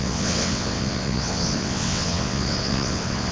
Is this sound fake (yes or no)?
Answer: yes